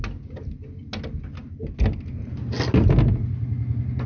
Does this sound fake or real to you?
real